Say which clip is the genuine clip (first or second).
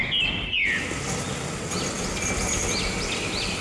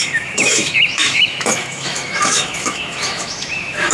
first